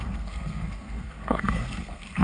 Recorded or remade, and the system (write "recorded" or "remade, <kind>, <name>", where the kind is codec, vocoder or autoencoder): remade, codec, SNAC